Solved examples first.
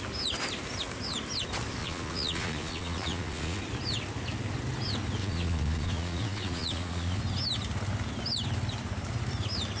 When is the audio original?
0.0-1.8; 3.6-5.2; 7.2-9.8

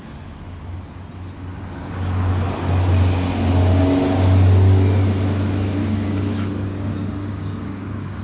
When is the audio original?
0.0-1.5; 2.3-5.8